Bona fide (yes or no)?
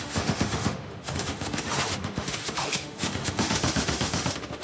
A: no